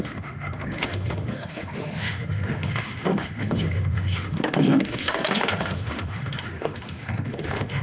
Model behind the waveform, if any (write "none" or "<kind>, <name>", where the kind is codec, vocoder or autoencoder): autoencoder, DAC-VAE